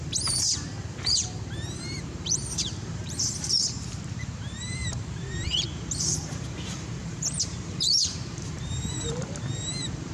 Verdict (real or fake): fake